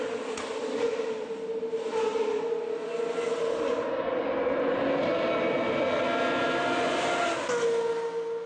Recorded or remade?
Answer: recorded